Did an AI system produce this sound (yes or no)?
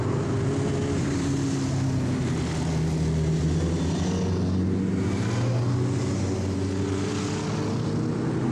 no